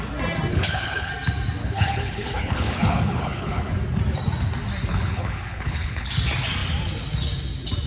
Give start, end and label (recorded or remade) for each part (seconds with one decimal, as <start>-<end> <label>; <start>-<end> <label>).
0.0-0.5 recorded; 0.5-1.1 remade; 1.1-1.6 recorded; 1.6-3.7 remade; 3.7-4.9 recorded; 4.9-6.1 remade; 6.1-7.9 recorded